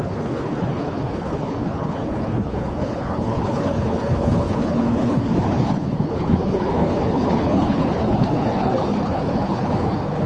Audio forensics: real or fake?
fake